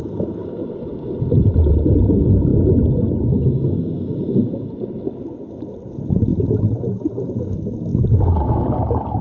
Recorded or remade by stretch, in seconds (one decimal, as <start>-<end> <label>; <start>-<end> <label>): 0.0-9.2 recorded